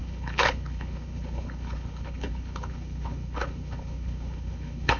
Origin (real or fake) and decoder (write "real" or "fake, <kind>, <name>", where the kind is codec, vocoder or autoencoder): fake, codec, HILCodec